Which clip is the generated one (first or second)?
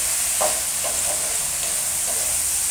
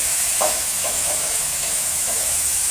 second